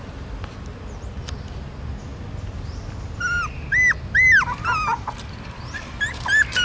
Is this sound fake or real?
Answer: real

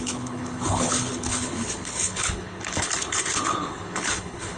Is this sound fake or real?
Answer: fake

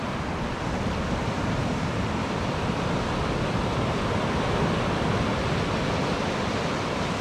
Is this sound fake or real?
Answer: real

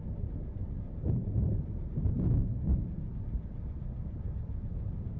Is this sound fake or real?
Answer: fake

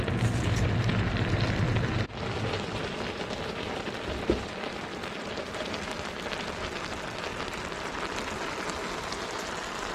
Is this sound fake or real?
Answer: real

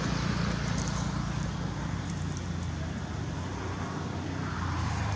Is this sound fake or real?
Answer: real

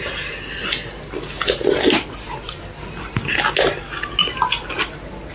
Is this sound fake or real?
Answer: real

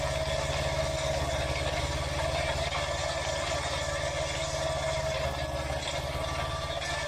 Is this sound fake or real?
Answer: real